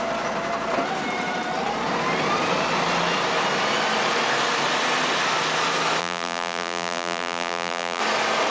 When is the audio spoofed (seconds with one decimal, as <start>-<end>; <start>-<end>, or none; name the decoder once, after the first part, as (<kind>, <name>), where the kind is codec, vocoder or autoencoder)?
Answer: 6.0-8.0 (vocoder, BigVGAN v2)